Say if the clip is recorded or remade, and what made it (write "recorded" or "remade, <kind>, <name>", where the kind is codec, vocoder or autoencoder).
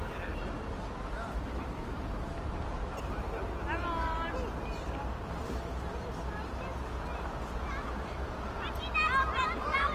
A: recorded